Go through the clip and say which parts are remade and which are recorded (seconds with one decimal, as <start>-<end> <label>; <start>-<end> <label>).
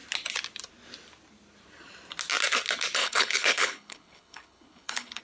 0.0-3.0 recorded; 3.0-5.2 remade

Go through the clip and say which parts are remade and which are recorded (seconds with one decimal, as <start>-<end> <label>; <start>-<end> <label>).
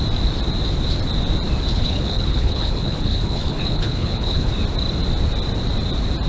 0.0-1.7 recorded; 1.7-4.5 remade; 4.5-6.3 recorded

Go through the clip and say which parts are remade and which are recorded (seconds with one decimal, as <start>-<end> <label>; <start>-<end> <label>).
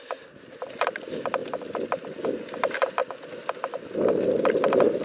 0.0-5.0 recorded